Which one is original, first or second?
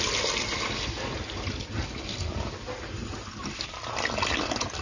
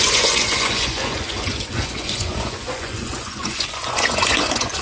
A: first